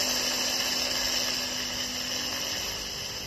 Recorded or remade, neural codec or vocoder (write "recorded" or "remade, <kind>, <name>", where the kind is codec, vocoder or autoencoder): recorded